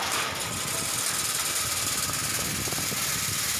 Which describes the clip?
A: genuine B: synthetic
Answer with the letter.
A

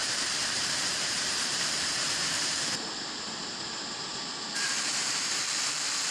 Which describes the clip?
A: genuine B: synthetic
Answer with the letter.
B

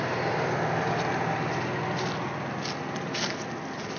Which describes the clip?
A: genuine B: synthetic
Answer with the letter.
A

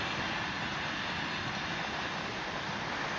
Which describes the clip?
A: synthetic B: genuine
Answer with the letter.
B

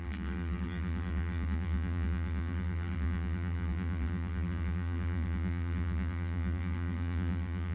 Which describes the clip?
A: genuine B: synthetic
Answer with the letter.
B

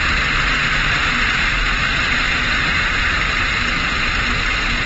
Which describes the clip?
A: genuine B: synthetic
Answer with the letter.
A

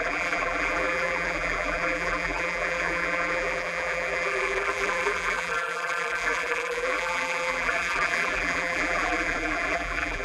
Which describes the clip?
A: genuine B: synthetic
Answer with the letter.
B